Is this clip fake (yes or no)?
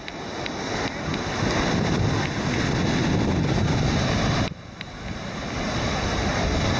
no